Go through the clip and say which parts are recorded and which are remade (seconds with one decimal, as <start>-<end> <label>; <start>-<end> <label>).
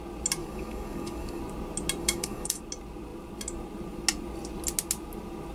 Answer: 0.0-0.4 recorded; 0.4-1.4 remade; 1.4-2.0 recorded; 2.0-2.6 remade; 2.6-5.5 recorded